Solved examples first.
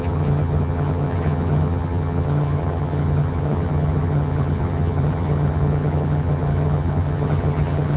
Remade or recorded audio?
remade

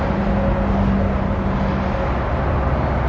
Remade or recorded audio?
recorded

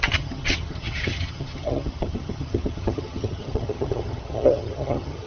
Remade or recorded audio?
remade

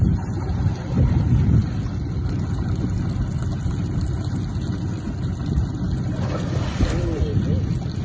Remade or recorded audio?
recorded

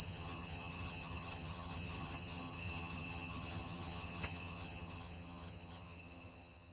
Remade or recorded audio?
remade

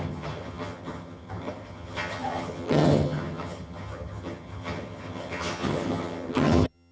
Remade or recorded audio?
remade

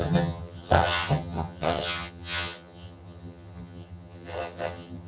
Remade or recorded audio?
remade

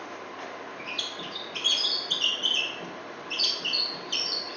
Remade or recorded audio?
recorded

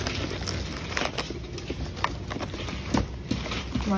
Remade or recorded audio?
recorded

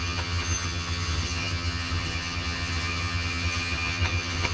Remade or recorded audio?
remade